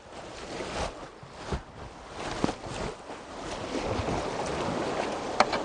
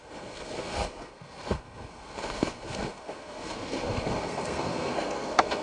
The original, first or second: first